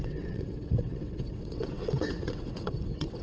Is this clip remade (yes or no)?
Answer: yes